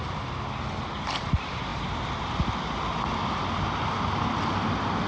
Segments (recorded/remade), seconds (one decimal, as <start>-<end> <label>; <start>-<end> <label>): 0.0-5.1 recorded